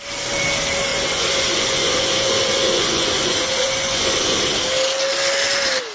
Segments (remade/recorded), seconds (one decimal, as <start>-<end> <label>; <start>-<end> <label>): 0.0-0.9 recorded; 0.9-4.4 remade; 4.4-5.9 recorded